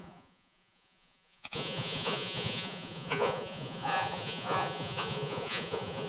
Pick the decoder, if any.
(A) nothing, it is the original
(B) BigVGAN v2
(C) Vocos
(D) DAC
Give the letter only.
C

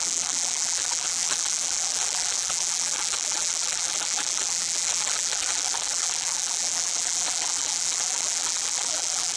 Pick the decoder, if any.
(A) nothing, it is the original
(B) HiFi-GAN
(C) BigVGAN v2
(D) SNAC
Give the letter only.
C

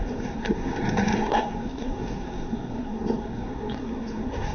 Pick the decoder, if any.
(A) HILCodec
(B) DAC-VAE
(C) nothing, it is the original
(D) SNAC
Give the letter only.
D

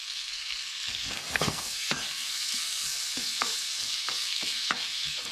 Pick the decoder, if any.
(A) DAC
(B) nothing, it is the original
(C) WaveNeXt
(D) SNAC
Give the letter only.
D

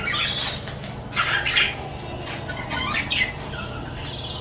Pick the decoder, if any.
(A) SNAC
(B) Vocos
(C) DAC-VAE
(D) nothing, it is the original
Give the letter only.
D